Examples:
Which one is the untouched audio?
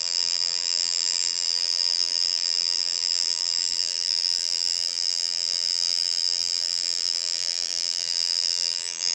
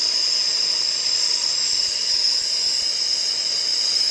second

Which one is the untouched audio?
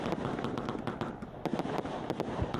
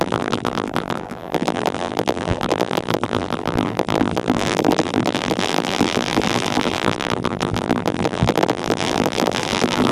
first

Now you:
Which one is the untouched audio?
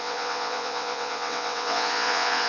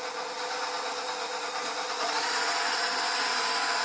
second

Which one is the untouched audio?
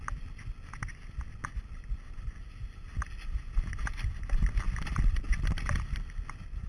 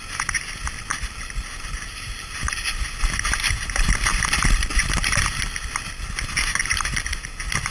first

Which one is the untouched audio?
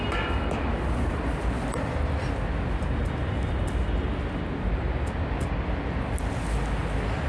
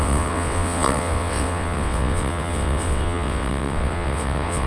first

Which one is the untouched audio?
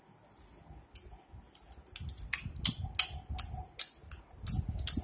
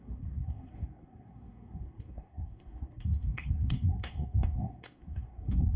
first